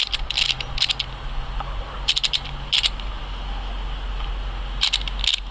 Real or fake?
real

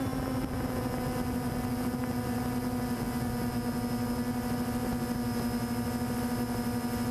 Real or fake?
real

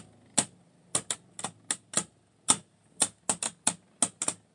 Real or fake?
real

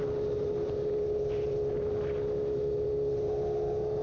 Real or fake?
real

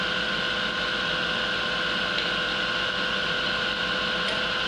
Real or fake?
real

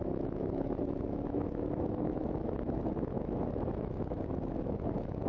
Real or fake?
fake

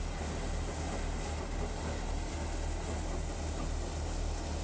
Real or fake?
real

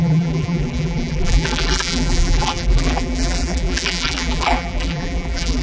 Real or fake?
fake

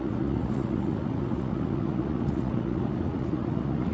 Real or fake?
fake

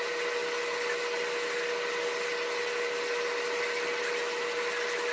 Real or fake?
real